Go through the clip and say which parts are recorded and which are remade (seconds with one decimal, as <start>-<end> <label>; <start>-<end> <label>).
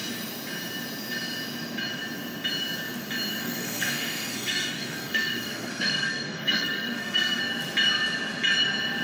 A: 0.0-3.4 recorded; 3.4-7.4 remade; 7.4-9.0 recorded